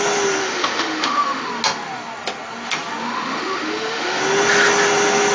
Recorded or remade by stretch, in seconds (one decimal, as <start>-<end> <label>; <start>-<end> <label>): 0.0-0.4 recorded; 0.4-1.5 remade; 1.5-3.0 recorded; 3.0-4.2 remade; 4.2-5.3 recorded